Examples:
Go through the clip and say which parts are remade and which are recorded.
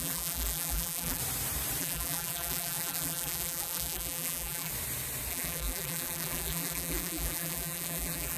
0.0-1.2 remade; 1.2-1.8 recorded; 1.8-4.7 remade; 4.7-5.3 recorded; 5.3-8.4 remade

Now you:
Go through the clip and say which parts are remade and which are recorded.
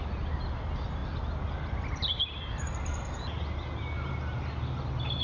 0.0-5.2 recorded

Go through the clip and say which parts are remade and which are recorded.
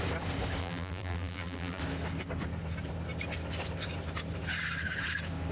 0.0-0.6 recorded; 0.6-1.8 remade; 1.8-5.5 recorded